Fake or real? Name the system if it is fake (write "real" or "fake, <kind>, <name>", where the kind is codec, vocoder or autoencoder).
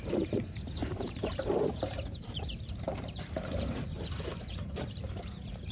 fake, vocoder, BigVGAN v2